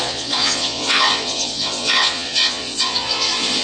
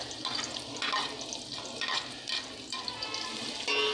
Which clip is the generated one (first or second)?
first